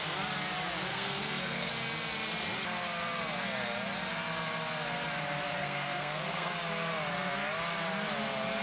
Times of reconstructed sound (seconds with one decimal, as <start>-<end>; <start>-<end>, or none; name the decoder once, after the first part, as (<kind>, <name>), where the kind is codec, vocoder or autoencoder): 0.9-1.7 (codec, SNAC); 5.5-6.5